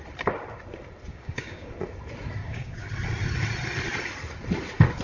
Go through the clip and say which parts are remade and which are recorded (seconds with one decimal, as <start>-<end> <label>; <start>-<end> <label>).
0.0-1.1 recorded; 1.1-1.7 remade; 1.7-2.4 recorded; 2.4-2.9 remade; 2.9-5.0 recorded